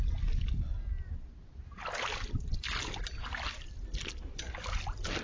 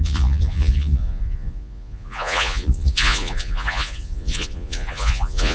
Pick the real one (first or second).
first